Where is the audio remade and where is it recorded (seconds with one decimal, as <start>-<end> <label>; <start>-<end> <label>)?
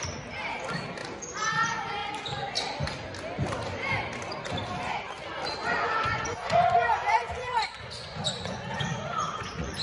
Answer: 0.0-5.6 recorded; 5.6-9.8 remade